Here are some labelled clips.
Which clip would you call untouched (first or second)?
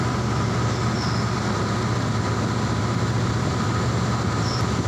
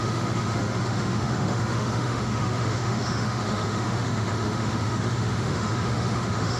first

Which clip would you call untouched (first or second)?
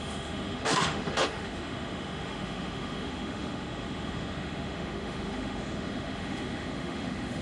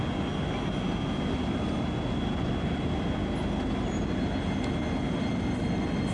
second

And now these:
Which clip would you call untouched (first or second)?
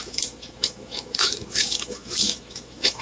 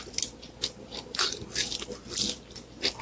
second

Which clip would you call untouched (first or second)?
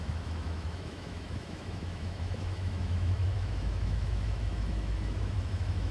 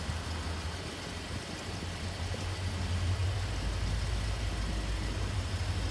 second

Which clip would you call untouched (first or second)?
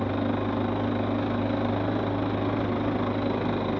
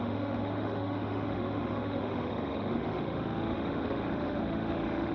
first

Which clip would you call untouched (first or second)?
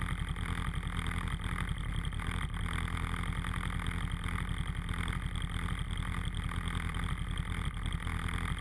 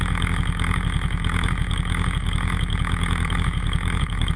first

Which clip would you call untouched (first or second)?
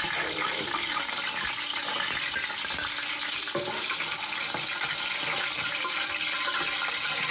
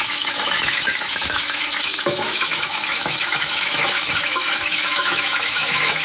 first